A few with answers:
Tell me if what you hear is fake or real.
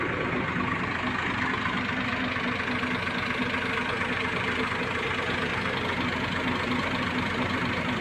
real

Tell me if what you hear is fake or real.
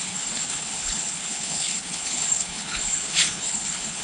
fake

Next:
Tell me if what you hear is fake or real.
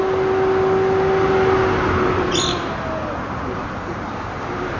real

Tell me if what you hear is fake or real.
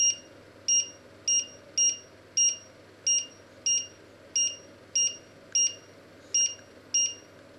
real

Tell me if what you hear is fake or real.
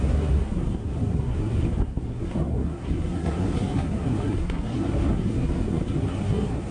fake